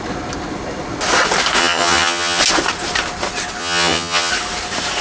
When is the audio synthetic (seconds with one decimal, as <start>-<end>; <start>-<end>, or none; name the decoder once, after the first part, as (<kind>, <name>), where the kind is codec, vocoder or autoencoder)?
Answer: 1.6-2.4 (vocoder, HiFi-GAN); 3.6-4.3